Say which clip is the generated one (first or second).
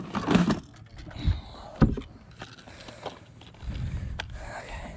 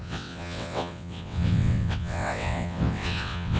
second